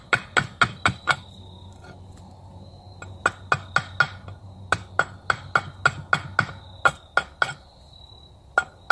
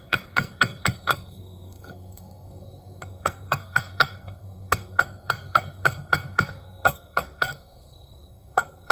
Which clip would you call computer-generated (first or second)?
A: second